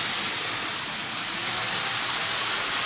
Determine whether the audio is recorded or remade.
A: recorded